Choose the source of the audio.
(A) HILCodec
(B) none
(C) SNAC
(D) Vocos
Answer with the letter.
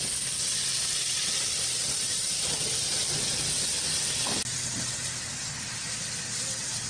B